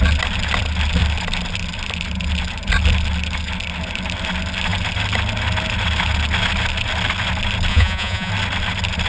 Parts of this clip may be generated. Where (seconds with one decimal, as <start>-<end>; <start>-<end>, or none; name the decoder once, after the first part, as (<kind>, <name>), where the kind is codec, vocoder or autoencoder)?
7.7-8.3 (vocoder, Vocos)